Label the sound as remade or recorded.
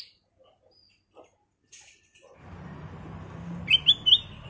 recorded